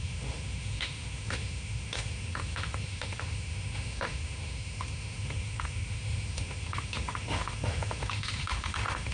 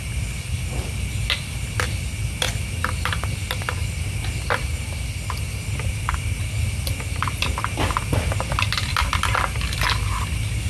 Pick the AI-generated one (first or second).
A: first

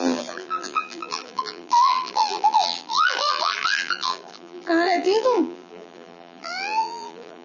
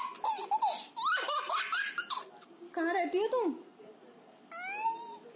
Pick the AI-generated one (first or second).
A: first